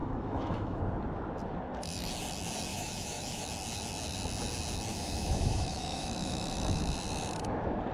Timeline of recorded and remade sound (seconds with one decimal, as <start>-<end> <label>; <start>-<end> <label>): 0.0-0.8 remade; 0.8-2.7 recorded; 2.7-3.4 remade; 3.4-4.9 recorded; 4.9-6.8 remade; 6.8-7.9 recorded